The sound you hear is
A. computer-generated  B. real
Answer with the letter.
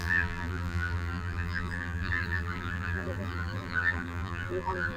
A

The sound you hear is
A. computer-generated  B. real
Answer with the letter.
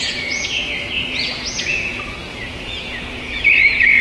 A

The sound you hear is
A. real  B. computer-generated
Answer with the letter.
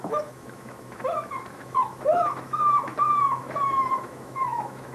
B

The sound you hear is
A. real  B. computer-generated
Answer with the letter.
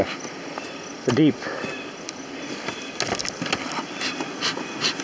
A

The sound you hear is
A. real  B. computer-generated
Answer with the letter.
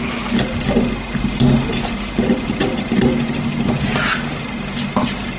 A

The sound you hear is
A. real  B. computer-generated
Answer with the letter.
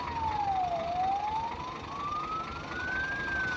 A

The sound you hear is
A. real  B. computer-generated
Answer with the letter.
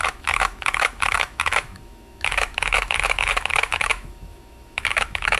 B